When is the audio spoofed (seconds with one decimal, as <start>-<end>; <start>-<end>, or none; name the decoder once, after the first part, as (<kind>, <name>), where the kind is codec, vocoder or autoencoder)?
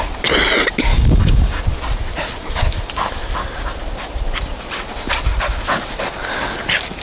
0.9-1.6 (codec, DAC)